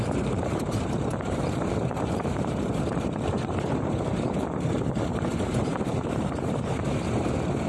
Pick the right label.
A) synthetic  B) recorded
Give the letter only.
A